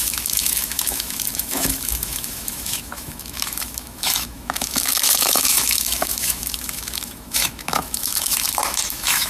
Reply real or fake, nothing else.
fake